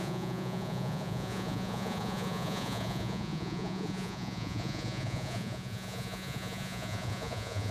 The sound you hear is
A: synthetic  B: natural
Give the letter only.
A